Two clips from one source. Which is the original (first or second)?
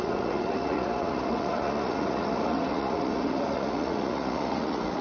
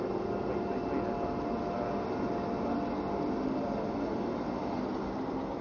second